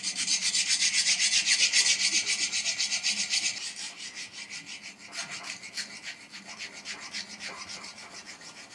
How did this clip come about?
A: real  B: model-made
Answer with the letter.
A